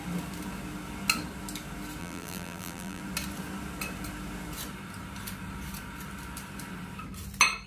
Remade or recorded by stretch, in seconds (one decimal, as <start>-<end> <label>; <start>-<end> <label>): 0.0-2.0 recorded; 2.0-3.0 remade; 3.0-7.7 recorded